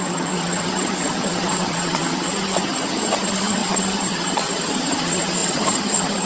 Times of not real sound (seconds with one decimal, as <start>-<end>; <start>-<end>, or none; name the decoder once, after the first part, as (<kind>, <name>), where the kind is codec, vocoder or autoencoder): 0.0-6.3 (vocoder, HiFi-GAN)